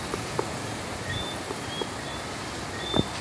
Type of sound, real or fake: real